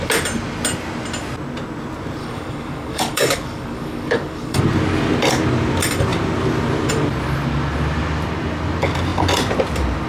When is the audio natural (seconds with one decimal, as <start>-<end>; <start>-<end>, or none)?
0.0-2.2; 4.6-10.1